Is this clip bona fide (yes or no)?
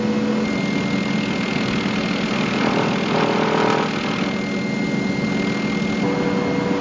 yes